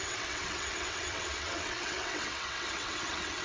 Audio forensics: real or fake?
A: fake